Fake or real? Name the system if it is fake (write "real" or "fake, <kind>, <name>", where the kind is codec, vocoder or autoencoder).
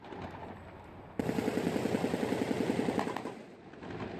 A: real